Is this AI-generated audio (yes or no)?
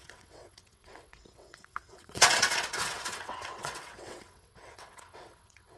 yes